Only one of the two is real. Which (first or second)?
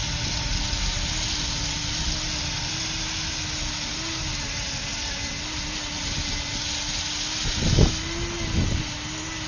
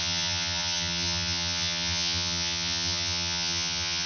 first